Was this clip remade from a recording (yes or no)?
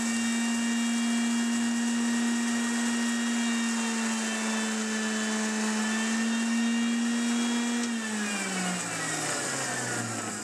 no